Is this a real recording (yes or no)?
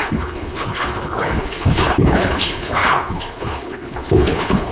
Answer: no